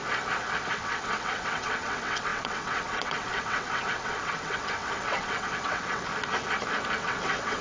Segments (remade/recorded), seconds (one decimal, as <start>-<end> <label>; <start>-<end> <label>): 0.0-0.7 recorded; 0.7-6.1 remade; 6.1-7.0 recorded; 7.0-7.6 remade